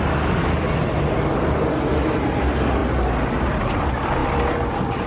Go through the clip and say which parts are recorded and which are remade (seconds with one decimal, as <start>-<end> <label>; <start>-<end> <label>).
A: 0.0-5.1 recorded